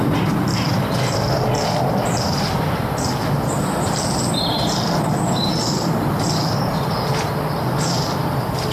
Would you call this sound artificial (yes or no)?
yes